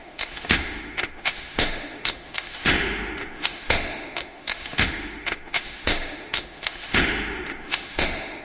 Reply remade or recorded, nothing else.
remade